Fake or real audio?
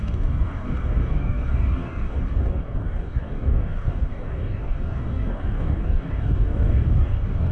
fake